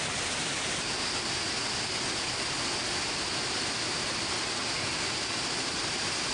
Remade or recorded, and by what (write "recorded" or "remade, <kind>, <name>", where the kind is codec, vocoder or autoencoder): recorded